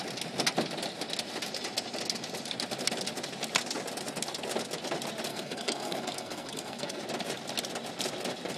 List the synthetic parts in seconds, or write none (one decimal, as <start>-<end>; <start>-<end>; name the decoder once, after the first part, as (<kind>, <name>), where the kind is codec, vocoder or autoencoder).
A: 5.3-7.0 (codec, SNAC)